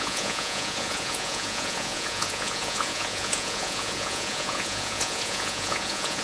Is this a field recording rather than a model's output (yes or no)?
no